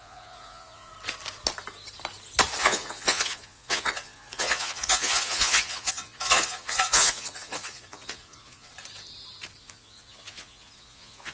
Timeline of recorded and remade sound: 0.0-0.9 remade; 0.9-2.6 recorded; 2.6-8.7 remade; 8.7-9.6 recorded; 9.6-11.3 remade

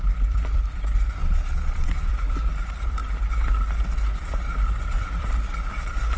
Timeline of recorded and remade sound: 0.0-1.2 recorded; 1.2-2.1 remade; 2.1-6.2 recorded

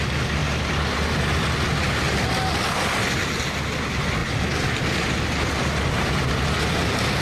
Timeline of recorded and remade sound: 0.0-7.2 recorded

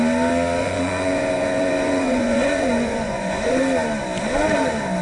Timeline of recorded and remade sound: 0.0-0.6 recorded; 0.6-3.5 remade; 3.5-5.0 recorded

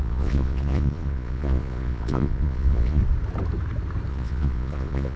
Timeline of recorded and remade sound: 0.0-3.0 remade; 3.0-4.1 recorded; 4.1-5.2 remade